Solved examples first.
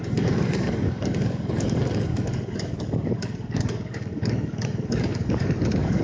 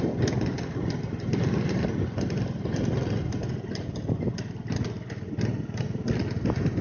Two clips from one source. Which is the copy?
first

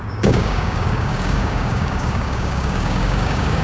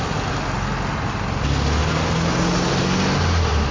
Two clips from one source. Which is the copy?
first